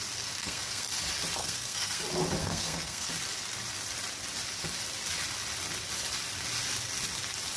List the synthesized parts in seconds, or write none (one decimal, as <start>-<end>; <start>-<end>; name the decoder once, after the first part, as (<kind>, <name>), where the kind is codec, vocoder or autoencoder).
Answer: 0.4-0.9 (codec, SNAC); 1.4-2.0; 2.4-3.1